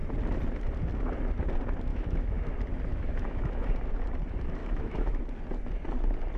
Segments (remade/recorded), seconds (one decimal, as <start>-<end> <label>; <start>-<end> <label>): 0.0-1.9 recorded; 1.9-2.4 remade; 2.4-2.9 recorded; 2.9-3.7 remade; 3.7-4.6 recorded; 4.6-5.2 remade; 5.2-6.4 recorded

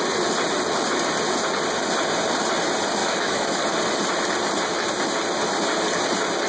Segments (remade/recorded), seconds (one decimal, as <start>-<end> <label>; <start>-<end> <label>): 0.0-3.0 recorded; 3.0-3.6 remade; 3.6-6.5 recorded